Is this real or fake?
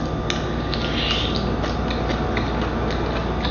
real